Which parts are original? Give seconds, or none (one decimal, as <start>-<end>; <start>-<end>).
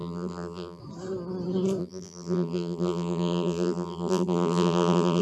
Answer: 0.8-1.8